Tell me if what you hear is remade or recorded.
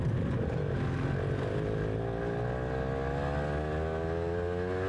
recorded